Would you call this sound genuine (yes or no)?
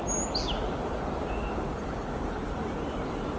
yes